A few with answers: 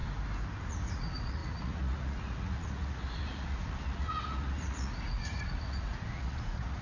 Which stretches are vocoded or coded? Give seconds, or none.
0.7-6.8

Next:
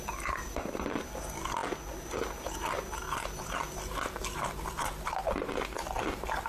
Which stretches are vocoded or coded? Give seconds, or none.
none

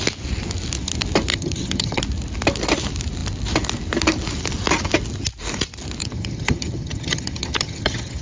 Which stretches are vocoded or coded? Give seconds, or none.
1.3-2.0; 6.0-8.2

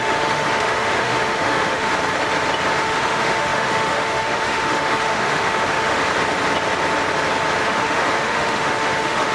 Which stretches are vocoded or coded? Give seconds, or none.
0.0-1.9; 2.8-6.0; 7.6-9.3

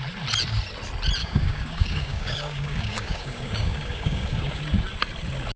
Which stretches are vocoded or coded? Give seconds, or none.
1.2-4.6

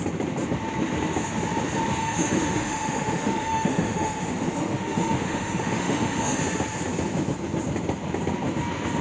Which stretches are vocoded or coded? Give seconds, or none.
2.0-6.4

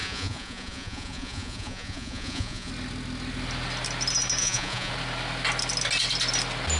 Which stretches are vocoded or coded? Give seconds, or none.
0.0-2.7; 4.4-4.9

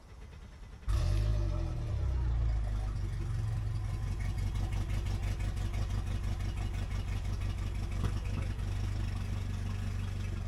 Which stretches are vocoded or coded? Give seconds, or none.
none